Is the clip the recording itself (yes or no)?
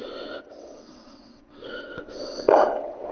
no